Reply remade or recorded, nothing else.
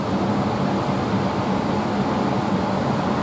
recorded